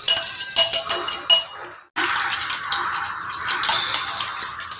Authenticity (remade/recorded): recorded